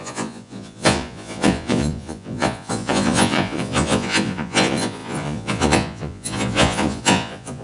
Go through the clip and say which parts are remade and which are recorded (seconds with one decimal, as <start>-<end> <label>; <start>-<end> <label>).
0.0-7.6 remade